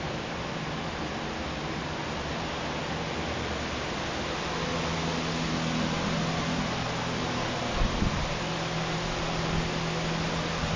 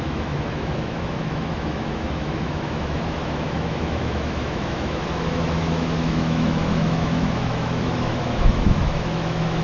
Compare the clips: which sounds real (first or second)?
first